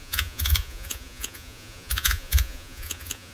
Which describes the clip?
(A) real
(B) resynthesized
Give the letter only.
B